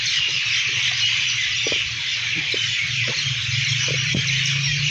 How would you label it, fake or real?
real